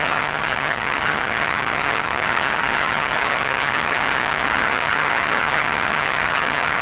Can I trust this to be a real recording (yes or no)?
no